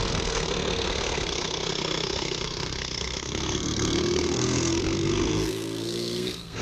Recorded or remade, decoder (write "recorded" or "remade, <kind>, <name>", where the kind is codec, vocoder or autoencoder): remade, codec, SNAC